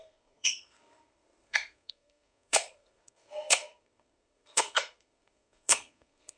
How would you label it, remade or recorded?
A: remade